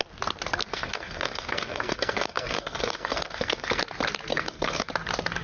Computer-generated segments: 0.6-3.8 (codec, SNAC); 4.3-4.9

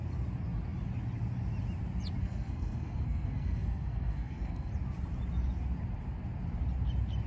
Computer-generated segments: 2.2-4.7 (codec, SNAC)

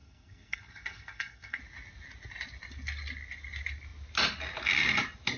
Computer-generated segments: 0.0-1.6 (codec, SNAC)

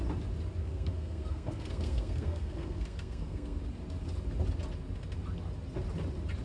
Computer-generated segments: 0.6-3.6 (codec, SNAC)

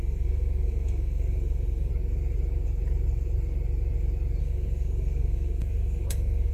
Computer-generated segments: 0.0-1.9 (codec, SNAC); 4.4-6.5

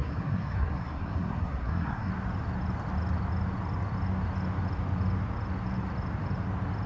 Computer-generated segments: 0.0-2.1 (codec, SNAC)

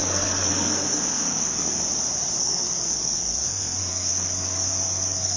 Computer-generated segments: 0.0-1.8 (codec, SNAC); 2.4-5.4